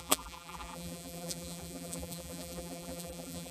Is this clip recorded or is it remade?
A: remade